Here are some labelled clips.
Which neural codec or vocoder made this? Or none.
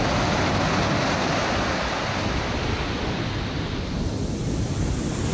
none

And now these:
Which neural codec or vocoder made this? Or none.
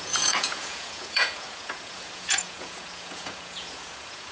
vocoder, Vocos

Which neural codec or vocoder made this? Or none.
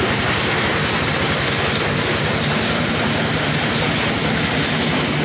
none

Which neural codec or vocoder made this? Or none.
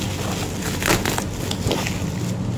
none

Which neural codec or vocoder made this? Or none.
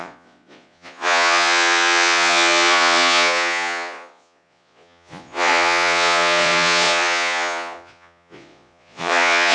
vocoder, Vocos